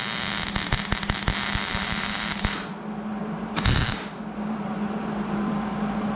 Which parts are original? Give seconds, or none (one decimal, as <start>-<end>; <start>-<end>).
0.0-1.7; 2.7-3.1